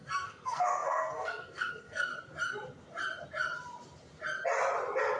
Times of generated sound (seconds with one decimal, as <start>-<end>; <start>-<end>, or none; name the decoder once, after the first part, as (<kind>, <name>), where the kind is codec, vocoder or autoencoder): 0.0-2.1 (codec, SNAC)